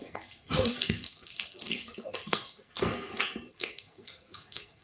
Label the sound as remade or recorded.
remade